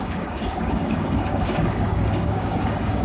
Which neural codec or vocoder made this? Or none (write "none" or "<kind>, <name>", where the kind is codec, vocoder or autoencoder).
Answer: codec, DAC